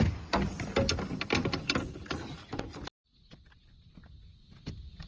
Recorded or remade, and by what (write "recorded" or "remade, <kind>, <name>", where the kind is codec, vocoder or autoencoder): recorded